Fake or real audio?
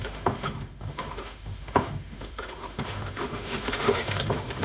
fake